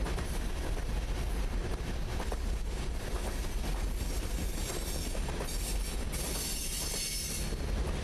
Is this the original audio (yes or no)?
yes